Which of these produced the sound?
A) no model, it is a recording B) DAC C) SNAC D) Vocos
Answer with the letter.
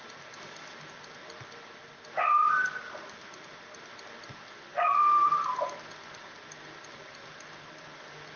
A